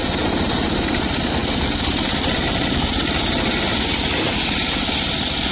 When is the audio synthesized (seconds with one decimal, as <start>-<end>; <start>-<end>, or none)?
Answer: none